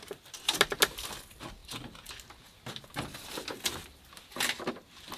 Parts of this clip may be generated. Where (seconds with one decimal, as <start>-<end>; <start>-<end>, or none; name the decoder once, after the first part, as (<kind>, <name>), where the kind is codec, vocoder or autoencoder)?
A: none